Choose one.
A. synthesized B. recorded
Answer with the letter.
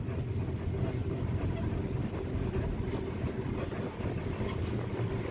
B